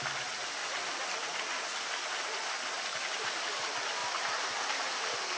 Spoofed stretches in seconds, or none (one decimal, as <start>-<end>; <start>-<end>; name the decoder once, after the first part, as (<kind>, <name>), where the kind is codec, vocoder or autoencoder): 4.0-5.0 (vocoder, BigVGAN v2)